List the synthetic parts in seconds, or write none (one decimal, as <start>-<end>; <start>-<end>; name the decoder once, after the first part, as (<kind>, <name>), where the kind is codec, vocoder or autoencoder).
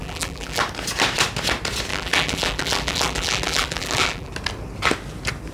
0.0-0.6 (vocoder, BigVGAN v2); 1.9-4.3